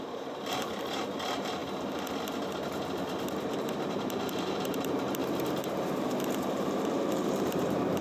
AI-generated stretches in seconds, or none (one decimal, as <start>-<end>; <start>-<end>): 0.0-1.6; 3.4-8.0